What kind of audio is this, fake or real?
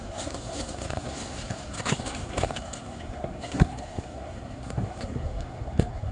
fake